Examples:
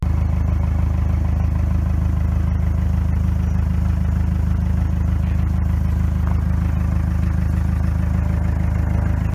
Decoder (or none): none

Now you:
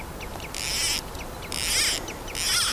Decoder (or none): none